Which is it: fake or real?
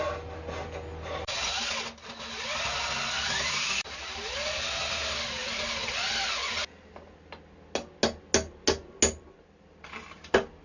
real